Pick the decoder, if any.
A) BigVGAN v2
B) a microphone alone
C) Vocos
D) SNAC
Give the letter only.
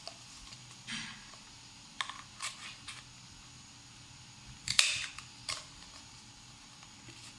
B